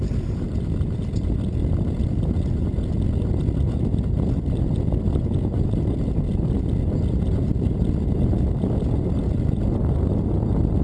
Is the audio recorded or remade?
remade